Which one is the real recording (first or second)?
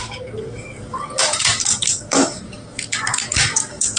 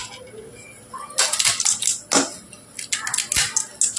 second